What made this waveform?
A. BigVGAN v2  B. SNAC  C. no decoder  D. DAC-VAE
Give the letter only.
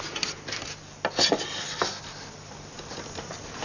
C